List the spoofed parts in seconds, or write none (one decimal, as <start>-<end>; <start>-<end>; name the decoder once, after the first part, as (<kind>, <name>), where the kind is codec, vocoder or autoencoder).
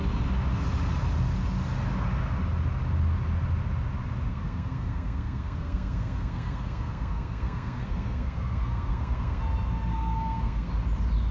4.3-9.4 (codec, SNAC); 9.9-10.7